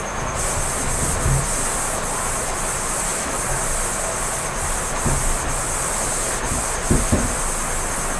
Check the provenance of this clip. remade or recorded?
recorded